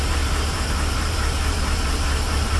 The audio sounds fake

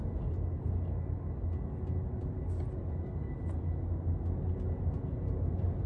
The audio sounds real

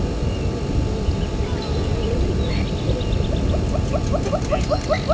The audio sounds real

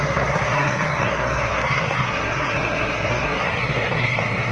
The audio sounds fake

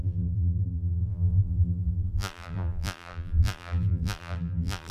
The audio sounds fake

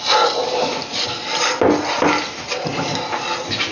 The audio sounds real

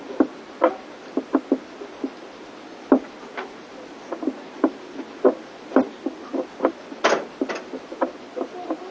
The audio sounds real